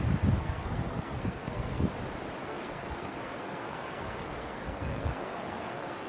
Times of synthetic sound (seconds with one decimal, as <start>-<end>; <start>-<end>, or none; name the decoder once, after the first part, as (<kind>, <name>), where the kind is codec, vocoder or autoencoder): 0.4-1.9 (codec, SNAC); 2.4-6.1